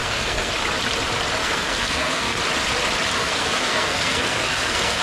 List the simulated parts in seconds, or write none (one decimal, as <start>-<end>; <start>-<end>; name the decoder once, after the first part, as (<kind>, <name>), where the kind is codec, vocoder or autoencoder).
0.0-0.5 (codec, SNAC); 1.4-2.4; 3.2-5.0